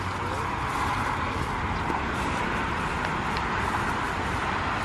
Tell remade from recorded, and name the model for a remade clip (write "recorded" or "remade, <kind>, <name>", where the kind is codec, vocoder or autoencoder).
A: recorded